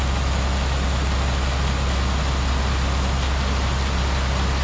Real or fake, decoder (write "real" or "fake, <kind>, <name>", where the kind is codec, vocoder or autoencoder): real